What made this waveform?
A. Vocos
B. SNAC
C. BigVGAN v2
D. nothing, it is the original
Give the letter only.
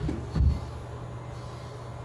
D